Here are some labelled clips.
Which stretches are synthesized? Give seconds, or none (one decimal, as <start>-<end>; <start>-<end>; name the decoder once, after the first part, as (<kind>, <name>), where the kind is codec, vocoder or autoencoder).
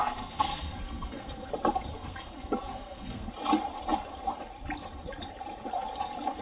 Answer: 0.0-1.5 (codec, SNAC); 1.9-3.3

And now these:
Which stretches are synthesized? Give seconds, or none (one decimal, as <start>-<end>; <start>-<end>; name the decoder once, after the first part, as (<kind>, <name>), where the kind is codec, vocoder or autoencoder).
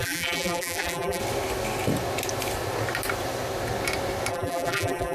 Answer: 0.0-1.2 (vocoder, BigVGAN v2); 4.3-5.1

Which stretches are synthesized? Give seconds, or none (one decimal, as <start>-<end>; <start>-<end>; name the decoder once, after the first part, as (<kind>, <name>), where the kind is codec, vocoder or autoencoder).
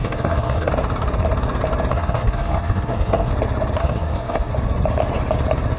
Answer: 0.0-0.7 (codec, SNAC); 1.9-3.3; 3.8-4.5